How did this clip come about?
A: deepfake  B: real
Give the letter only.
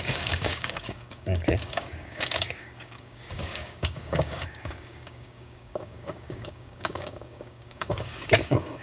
A